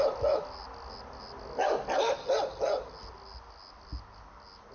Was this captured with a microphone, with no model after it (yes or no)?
yes